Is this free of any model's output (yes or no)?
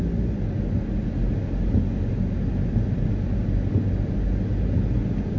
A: yes